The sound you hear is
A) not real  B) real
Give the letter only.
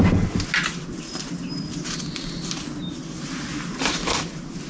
B